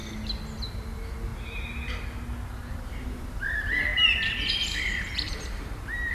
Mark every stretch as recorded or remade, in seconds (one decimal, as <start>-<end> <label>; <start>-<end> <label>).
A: 0.0-0.7 recorded; 0.7-1.3 remade; 1.3-2.7 recorded; 2.7-6.1 remade